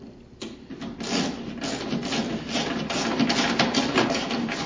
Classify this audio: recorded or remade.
recorded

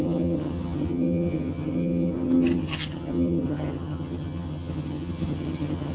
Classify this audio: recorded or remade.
remade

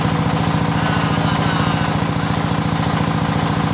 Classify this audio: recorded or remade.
recorded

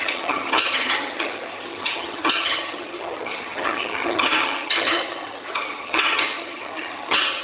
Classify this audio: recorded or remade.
remade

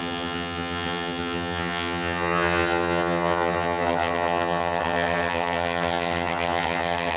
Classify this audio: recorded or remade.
remade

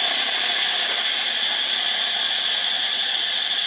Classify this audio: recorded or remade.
recorded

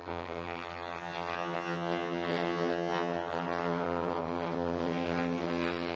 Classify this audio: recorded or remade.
remade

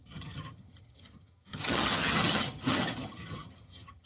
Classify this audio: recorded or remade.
remade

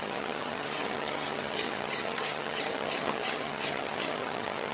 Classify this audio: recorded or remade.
remade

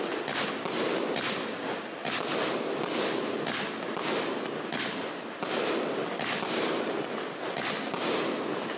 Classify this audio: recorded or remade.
recorded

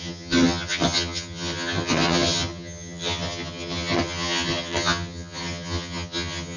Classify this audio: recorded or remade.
remade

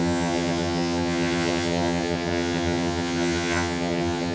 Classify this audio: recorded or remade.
remade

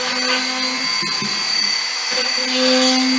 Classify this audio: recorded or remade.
recorded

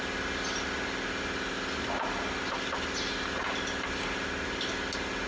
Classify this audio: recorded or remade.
recorded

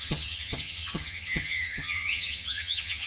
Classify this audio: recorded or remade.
remade